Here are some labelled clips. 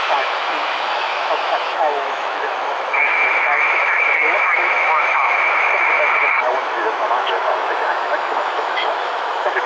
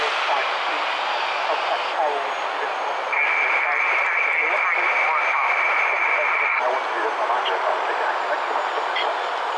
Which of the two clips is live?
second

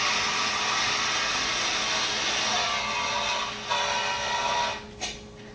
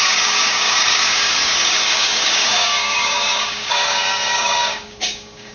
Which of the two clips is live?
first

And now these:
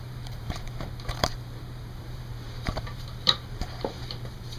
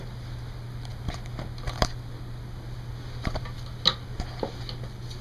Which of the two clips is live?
second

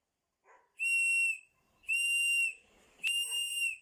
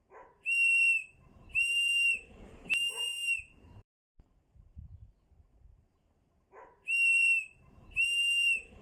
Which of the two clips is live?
first